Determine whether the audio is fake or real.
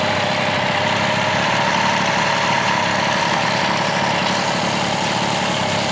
real